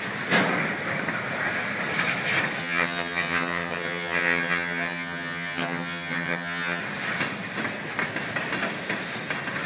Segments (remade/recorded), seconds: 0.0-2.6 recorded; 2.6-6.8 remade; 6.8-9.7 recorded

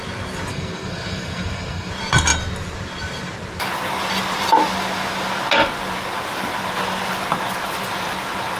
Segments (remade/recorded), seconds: 0.0-0.5 recorded; 0.5-1.9 remade; 1.9-8.6 recorded

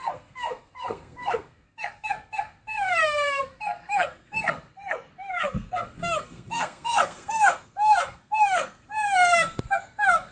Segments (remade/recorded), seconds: 0.0-10.3 remade

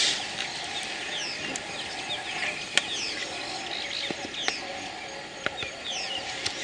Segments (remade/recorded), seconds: 0.0-6.6 recorded

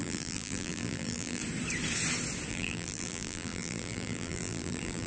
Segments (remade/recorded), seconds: 0.0-1.4 remade; 1.4-2.5 recorded; 2.5-5.1 remade

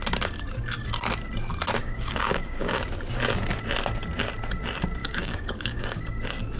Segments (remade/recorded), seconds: 0.0-1.8 recorded; 1.8-2.8 remade; 2.8-5.0 recorded; 5.0-6.0 remade; 6.0-6.6 recorded

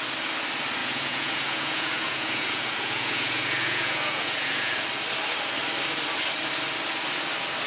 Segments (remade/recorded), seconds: 0.0-0.8 recorded; 0.8-4.8 remade; 4.8-7.7 recorded